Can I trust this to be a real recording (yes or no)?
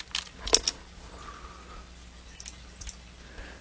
yes